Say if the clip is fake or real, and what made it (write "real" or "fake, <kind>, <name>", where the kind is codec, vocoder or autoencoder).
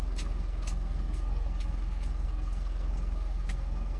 fake, codec, SNAC